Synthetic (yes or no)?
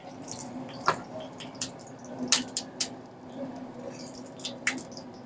no